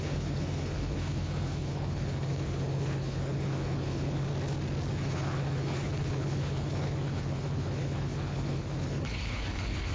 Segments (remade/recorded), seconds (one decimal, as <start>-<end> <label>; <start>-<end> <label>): 0.0-4.3 remade; 4.3-4.9 recorded; 4.9-9.9 remade